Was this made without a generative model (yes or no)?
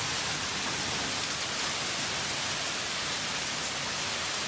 yes